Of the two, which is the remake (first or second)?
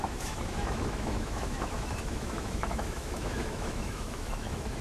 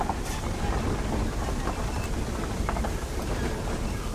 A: first